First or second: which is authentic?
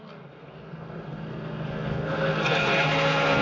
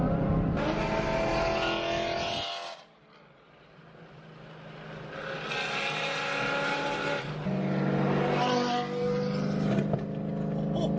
second